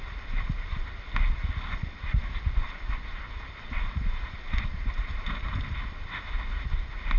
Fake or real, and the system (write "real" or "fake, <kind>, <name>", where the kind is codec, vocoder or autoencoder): real